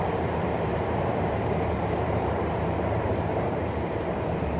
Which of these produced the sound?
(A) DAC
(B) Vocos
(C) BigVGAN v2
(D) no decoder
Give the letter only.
C